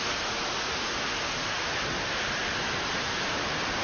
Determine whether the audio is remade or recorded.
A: remade